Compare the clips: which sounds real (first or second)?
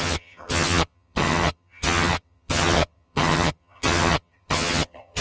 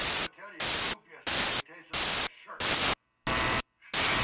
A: second